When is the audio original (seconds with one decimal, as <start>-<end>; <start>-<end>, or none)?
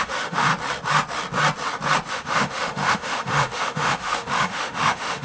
0.5-2.1